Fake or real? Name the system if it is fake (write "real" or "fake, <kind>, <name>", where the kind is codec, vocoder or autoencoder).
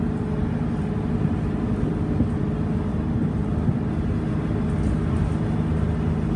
real